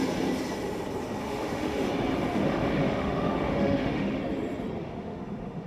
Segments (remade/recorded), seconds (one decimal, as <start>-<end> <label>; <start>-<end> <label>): 0.0-1.2 recorded; 1.2-1.9 remade; 1.9-2.3 recorded; 2.3-4.2 remade; 4.2-4.8 recorded; 4.8-5.7 remade